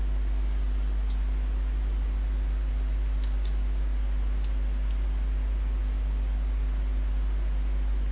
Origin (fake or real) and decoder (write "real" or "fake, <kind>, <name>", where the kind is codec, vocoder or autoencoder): real